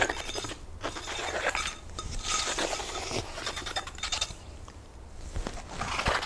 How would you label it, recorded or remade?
recorded